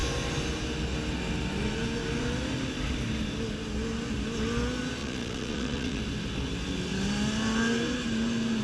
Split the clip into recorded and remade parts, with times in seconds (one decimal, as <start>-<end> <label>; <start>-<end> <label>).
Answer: 0.0-5.0 recorded; 5.0-6.0 remade; 6.0-8.6 recorded